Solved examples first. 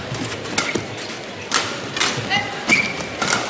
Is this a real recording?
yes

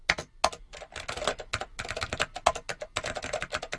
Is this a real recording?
yes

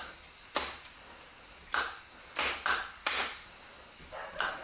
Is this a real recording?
yes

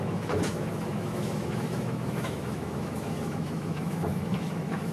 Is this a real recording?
no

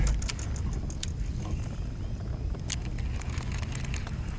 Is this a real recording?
yes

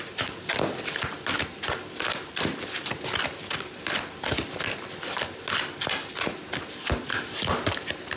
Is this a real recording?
yes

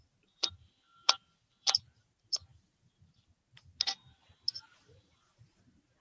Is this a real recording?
yes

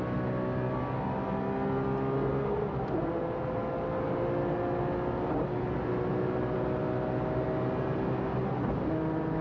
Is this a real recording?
yes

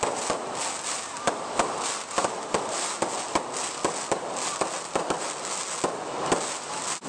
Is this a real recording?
yes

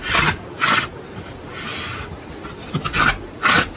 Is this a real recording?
yes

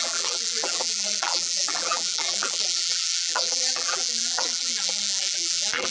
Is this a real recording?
no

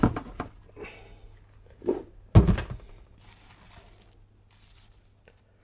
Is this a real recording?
yes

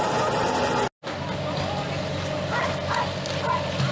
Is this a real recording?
yes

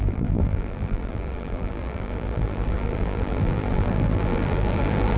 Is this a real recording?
no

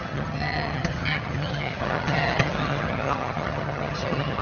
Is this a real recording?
no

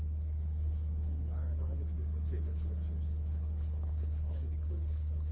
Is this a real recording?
no